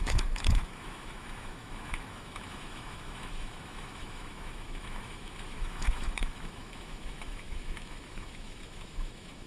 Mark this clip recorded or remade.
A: remade